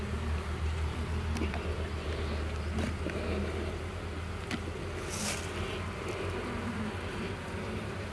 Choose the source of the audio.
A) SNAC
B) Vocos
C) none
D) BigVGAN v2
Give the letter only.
C